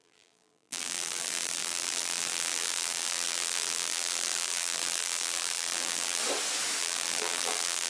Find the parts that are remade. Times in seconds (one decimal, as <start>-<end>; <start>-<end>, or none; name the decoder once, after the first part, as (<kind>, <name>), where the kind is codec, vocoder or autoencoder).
0.0-6.2 (vocoder, BigVGAN v2); 6.8-7.9